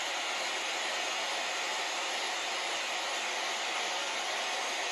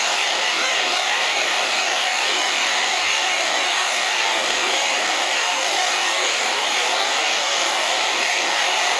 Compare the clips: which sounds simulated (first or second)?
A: second